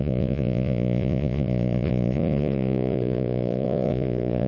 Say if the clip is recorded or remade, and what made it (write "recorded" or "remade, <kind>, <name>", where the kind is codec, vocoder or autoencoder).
remade, vocoder, Vocos